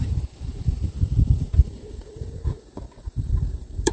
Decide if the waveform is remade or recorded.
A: remade